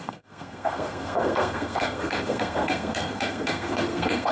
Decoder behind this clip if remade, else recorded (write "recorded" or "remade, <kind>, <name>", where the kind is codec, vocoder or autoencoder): remade, codec, SNAC